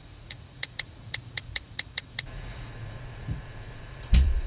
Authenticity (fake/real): fake